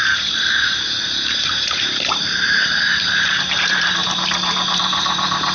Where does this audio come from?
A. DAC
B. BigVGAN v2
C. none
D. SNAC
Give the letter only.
B